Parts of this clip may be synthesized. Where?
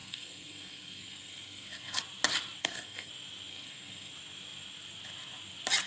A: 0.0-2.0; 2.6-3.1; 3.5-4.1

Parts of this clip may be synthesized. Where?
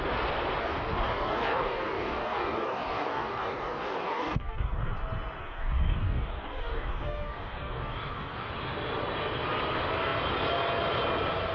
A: 0.6-4.9; 5.4-8.5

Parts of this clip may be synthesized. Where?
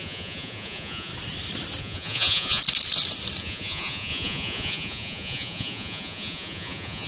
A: 0.0-1.1; 1.8-2.6; 3.4-7.1